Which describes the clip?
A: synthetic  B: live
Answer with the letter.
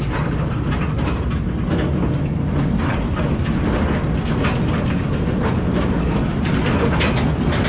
B